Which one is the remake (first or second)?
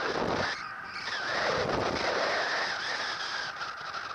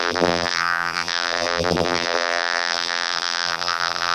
second